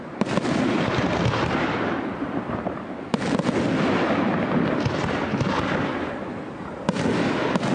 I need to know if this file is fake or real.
real